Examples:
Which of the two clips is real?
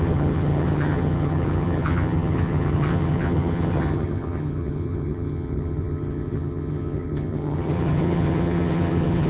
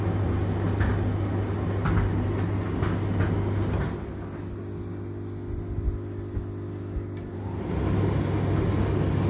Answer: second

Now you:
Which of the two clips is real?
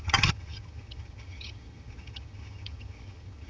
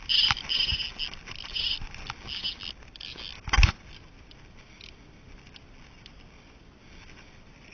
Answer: second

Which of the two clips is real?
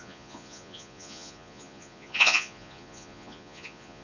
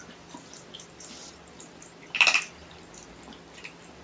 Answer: second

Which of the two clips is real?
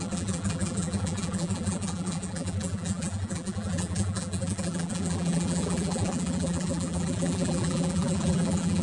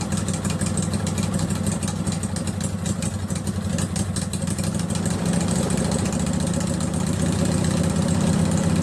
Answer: second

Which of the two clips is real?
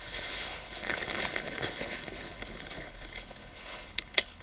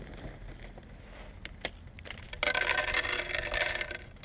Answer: second